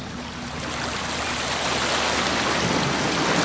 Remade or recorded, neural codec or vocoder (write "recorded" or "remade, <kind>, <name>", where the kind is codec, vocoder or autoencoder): recorded